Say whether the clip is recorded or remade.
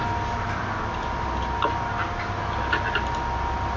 recorded